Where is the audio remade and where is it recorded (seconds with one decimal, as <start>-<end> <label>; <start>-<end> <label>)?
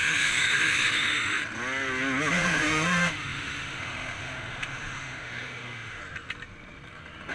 0.0-1.4 remade; 1.4-2.3 recorded; 2.3-6.0 remade; 6.0-7.3 recorded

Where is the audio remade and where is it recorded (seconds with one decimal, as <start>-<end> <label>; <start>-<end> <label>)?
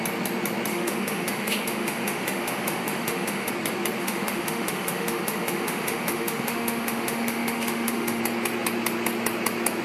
0.0-0.7 recorded; 0.7-3.5 remade; 3.5-4.0 recorded; 4.0-8.2 remade; 8.2-9.8 recorded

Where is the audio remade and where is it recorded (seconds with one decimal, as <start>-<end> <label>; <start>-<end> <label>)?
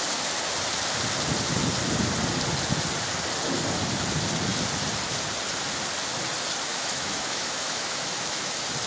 0.0-6.7 recorded; 6.7-8.5 remade; 8.5-8.9 recorded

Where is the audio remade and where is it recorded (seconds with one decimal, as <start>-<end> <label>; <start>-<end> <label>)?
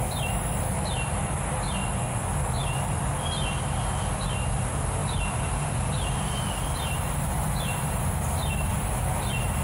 0.0-9.6 recorded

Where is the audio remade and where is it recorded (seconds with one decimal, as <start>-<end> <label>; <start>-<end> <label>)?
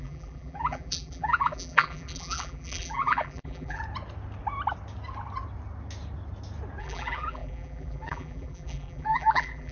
0.0-3.8 remade; 3.8-6.8 recorded; 6.8-9.7 remade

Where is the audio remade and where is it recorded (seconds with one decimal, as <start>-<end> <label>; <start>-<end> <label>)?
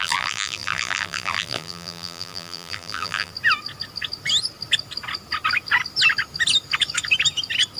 0.0-3.3 remade; 3.3-7.8 recorded